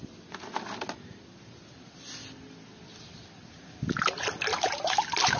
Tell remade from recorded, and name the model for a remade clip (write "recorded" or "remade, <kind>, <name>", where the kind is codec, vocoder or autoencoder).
recorded